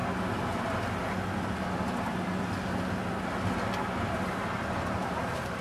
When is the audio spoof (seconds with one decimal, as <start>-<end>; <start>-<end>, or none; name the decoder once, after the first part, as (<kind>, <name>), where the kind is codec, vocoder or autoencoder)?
none